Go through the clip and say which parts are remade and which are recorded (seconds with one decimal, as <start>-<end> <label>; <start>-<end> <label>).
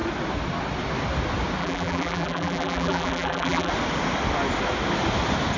0.0-1.6 recorded; 1.6-3.7 remade; 3.7-5.6 recorded